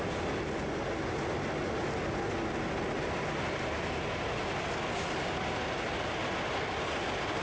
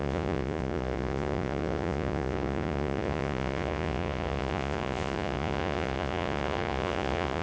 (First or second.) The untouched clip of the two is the first